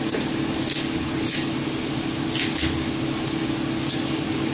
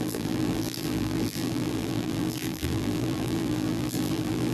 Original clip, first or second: first